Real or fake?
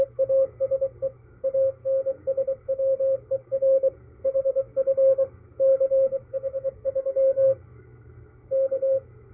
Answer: fake